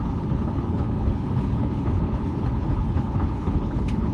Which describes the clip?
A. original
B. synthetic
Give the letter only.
B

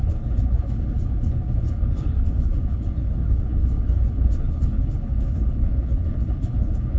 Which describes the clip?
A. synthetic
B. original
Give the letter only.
A